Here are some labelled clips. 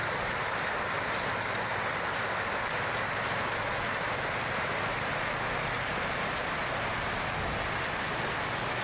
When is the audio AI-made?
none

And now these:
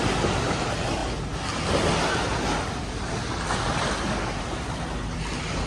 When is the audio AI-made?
none

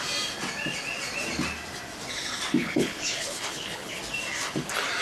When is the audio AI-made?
2.6-4.0 (codec, HILCodec)

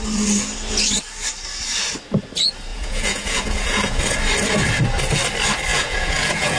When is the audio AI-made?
2.7-4.0 (vocoder, Vocos); 5.7-6.6

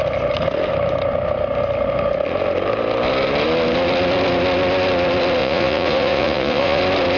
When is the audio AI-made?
5.4-6.8 (vocoder, Vocos)

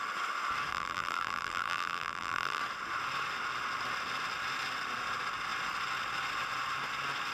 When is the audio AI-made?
0.7-2.6 (vocoder, BigVGAN v2)

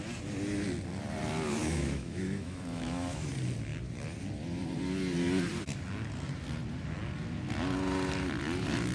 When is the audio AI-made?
1.6-3.3 (autoencoder, DAC-VAE)

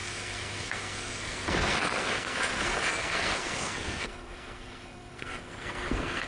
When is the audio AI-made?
0.0-6.3 (codec, SNAC)